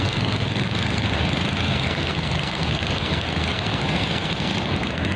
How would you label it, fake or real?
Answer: fake